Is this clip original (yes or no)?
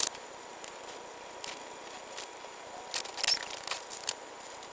yes